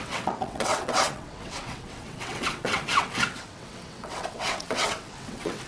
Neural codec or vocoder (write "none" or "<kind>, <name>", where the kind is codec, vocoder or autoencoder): vocoder, WaveNeXt